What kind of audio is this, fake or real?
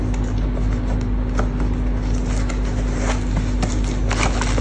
real